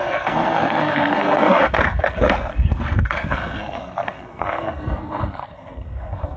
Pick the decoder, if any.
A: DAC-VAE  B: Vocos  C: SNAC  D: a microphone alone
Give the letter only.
C